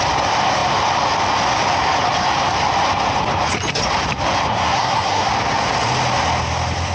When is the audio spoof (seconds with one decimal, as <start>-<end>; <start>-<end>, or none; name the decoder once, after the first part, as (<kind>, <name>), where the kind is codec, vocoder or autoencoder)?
4.5-5.3 (codec, SNAC)